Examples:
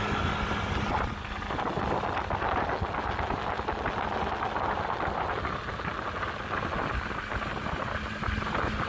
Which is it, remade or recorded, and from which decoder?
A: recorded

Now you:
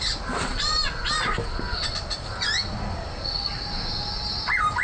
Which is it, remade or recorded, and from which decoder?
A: recorded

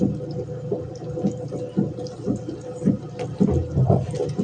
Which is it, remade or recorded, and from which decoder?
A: recorded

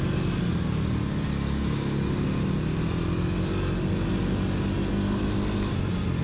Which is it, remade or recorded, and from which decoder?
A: recorded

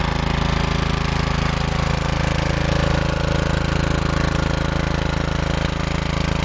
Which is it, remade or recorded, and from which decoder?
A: recorded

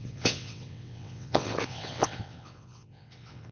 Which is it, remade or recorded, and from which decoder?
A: remade, vocoder, WaveNeXt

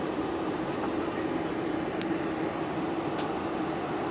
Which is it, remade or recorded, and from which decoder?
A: recorded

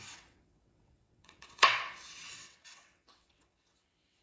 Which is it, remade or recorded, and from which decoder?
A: remade, vocoder, WaveNeXt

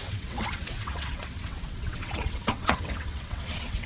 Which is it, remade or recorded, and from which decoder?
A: remade, vocoder, WaveNeXt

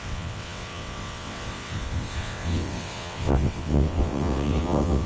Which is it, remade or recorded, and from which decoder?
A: remade, vocoder, WaveNeXt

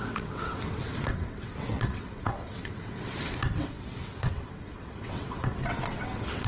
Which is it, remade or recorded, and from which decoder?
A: remade, vocoder, WaveNeXt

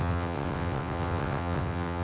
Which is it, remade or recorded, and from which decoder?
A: remade, vocoder, WaveNeXt